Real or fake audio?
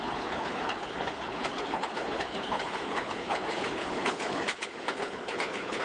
fake